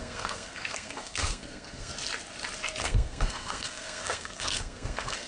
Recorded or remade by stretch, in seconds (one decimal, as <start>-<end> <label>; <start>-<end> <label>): 0.0-1.9 remade; 1.9-2.8 recorded; 2.8-5.3 remade